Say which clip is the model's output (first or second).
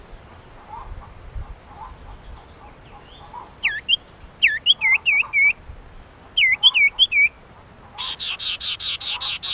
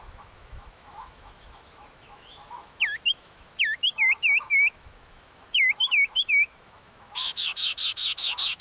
second